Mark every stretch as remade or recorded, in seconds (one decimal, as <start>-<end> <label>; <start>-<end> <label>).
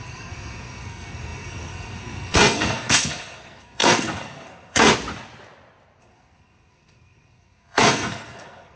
0.0-4.9 remade; 4.9-6.0 recorded; 6.0-8.8 remade